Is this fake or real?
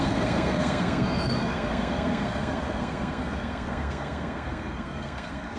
fake